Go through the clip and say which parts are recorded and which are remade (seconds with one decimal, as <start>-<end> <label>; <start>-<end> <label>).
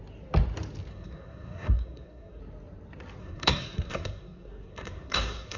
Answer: 0.0-0.9 recorded; 0.9-2.4 remade; 2.4-3.2 recorded; 3.2-5.6 remade